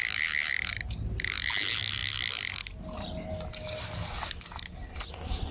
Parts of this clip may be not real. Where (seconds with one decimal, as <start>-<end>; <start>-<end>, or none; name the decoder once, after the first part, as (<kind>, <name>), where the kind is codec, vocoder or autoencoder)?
none